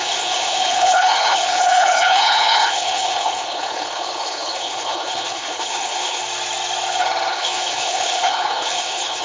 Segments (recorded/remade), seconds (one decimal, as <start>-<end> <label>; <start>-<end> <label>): 0.0-6.2 remade; 6.2-7.3 recorded; 7.3-9.2 remade